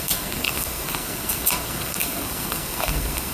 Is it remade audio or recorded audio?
remade